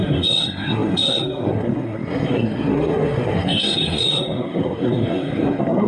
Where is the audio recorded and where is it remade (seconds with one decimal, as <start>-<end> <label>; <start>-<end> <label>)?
0.0-5.9 remade